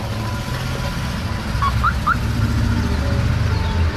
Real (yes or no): yes